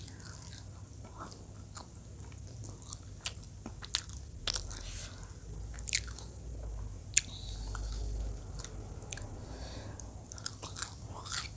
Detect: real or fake real